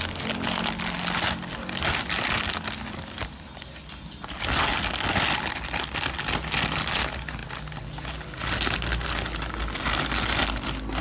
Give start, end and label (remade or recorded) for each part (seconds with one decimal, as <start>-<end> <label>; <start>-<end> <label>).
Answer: 0.0-11.0 recorded